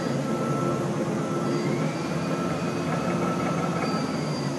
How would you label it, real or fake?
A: real